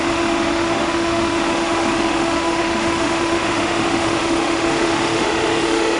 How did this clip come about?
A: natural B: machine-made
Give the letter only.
B